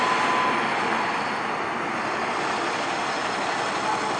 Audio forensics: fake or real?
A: real